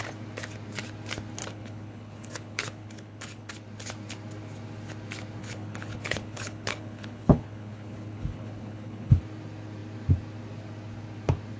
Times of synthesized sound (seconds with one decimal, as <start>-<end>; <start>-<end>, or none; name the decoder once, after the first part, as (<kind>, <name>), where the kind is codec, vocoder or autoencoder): 1.4-3.5 (codec, HILCodec); 5.4-9.2